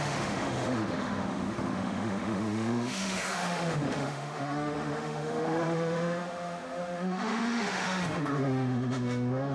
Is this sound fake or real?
fake